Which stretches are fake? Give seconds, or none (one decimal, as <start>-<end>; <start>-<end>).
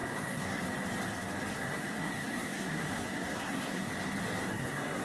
0.0-0.6; 1.5-3.9; 4.5-5.0